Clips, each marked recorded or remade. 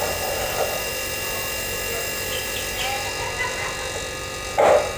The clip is recorded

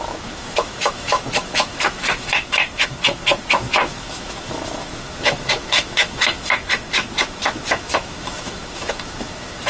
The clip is remade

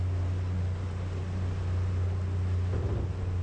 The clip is recorded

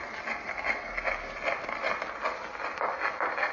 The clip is recorded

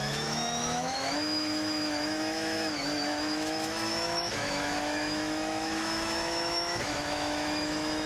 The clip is remade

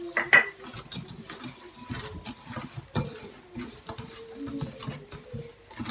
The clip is recorded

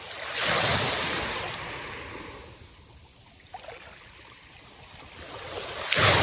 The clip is recorded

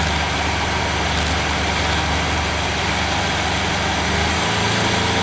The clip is recorded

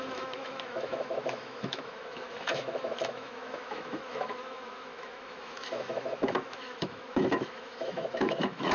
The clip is remade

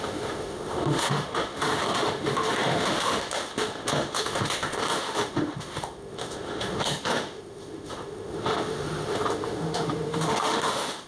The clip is remade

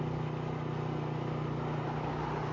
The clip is recorded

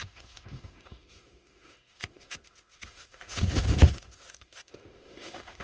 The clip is remade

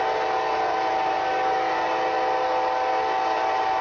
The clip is recorded